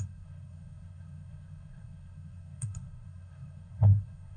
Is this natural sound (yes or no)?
no